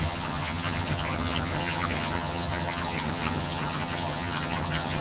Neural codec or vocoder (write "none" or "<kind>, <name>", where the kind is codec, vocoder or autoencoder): vocoder, HiFi-GAN